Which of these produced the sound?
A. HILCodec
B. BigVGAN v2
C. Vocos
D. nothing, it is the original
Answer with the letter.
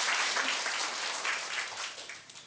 B